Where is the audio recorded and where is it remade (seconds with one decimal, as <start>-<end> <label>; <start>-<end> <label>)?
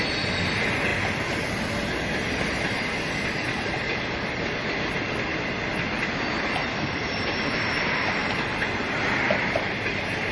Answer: 0.0-10.3 recorded